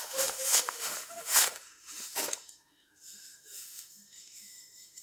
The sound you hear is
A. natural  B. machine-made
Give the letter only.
B